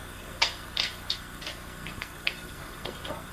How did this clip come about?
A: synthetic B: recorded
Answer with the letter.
A